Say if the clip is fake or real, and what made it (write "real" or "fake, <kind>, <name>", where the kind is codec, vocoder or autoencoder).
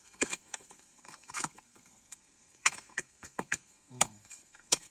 fake, codec, SNAC